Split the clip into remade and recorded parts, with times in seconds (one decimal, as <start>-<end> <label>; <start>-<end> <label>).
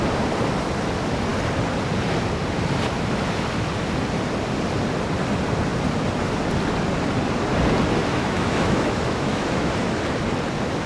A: 0.0-8.2 recorded; 8.2-9.7 remade; 9.7-10.9 recorded